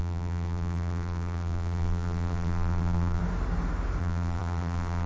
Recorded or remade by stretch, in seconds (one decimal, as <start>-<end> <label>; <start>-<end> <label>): 0.0-3.2 remade; 3.2-4.0 recorded; 4.0-5.1 remade